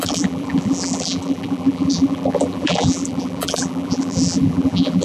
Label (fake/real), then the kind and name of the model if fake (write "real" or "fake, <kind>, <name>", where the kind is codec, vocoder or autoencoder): fake, vocoder, BigVGAN v2